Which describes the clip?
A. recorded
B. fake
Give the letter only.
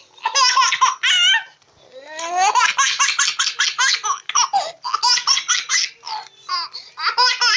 A